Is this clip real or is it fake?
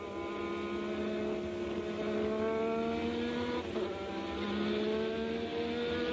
real